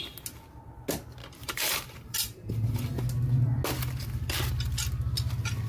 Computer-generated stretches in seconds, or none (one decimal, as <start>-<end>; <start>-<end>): 1.2-3.1